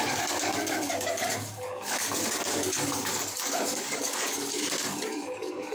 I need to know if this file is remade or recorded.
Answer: remade